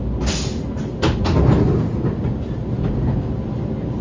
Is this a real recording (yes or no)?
yes